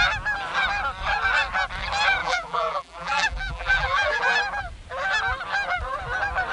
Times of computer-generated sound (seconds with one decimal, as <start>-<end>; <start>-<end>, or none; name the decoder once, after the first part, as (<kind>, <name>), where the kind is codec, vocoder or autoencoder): 2.2-4.2 (vocoder, BigVGAN v2)